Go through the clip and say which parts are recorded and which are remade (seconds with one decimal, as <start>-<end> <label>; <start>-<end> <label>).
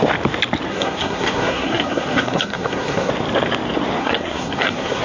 0.0-0.7 recorded; 0.7-3.1 remade; 3.1-4.0 recorded; 4.0-5.0 remade